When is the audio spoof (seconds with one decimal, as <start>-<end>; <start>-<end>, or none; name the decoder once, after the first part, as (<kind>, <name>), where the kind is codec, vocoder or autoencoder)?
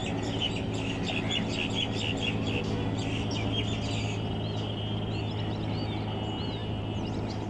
none